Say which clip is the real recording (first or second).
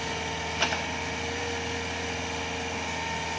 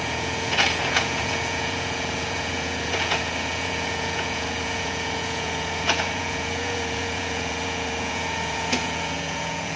first